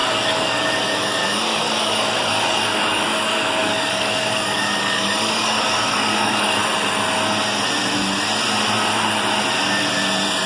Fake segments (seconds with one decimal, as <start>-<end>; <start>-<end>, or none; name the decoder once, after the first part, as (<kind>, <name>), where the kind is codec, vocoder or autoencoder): 0.0-6.6 (codec, DAC)

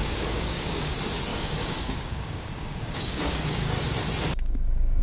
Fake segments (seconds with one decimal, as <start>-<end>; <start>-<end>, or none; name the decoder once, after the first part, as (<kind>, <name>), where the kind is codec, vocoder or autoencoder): 0.0-0.9 (codec, DAC); 1.3-3.8

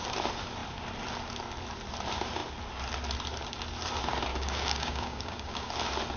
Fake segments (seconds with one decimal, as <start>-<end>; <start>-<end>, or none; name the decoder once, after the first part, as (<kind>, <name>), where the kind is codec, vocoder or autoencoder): 4.3-5.7 (codec, DAC)

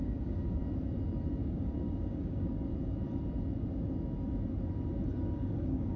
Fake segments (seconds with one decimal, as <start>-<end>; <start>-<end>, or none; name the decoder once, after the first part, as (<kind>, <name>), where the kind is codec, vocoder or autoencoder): 0.0-0.6 (codec, DAC); 1.5-2.7; 5.2-6.0

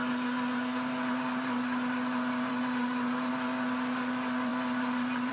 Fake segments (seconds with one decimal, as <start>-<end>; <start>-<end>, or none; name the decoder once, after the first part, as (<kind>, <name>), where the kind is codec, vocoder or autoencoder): none

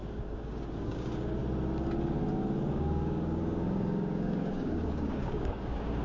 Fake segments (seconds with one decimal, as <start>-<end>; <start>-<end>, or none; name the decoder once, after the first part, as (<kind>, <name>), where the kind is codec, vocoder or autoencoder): 0.0-1.4 (codec, DAC); 2.7-6.0

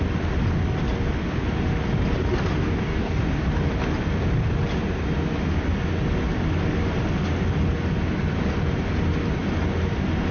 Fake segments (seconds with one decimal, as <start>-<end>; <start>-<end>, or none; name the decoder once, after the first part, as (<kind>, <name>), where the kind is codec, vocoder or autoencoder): 2.6-3.2 (codec, DAC)

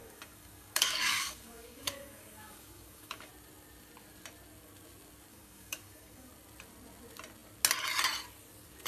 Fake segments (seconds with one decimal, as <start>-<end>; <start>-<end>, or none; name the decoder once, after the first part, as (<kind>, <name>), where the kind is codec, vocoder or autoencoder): 0.0-3.3 (codec, DAC); 5.3-6.3